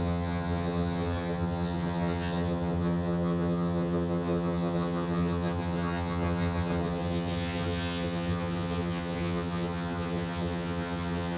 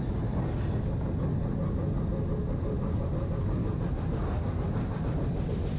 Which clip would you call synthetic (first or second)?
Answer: first